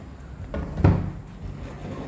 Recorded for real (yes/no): yes